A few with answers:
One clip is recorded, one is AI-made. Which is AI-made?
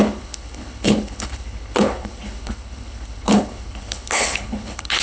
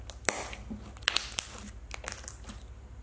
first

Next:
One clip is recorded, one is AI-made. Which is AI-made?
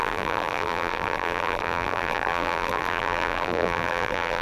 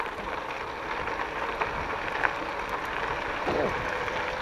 first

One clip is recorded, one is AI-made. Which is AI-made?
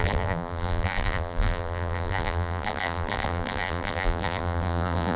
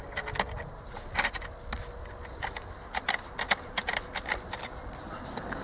first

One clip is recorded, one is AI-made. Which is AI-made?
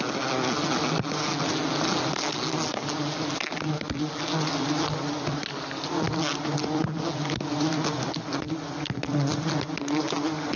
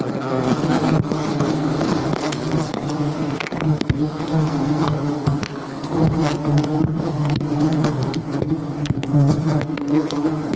second